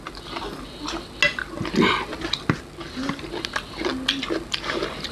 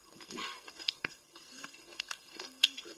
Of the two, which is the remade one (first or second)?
second